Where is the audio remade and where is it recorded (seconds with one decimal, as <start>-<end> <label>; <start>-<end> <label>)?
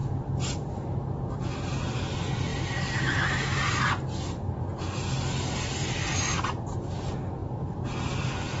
0.0-1.4 remade; 1.4-7.4 recorded; 7.4-8.6 remade